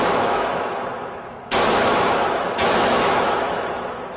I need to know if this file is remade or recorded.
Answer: remade